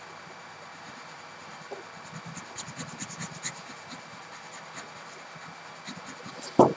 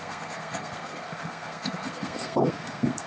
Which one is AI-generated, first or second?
second